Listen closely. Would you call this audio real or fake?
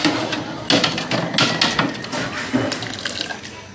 real